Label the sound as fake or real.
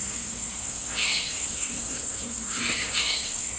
fake